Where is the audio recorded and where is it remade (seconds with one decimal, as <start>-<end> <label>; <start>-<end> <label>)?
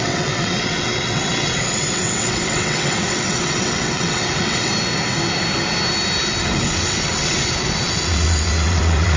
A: 0.0-4.7 remade; 4.7-6.4 recorded; 6.4-9.2 remade